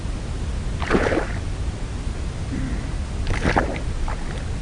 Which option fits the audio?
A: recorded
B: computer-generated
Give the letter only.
A